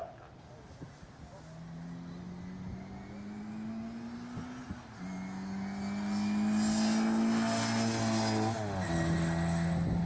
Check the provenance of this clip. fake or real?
real